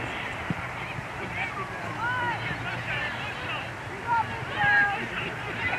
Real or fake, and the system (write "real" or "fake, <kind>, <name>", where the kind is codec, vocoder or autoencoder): fake, vocoder, BigVGAN v2